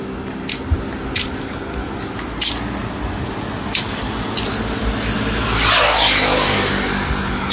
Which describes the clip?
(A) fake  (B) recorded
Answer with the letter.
B